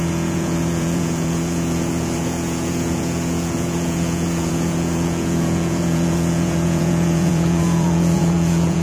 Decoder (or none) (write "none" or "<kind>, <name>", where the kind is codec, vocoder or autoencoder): vocoder, Vocos